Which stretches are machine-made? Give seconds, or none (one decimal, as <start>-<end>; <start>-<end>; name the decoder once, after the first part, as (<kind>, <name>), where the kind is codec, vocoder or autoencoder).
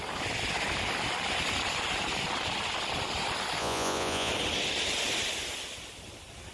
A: 3.6-4.3 (vocoder, Vocos)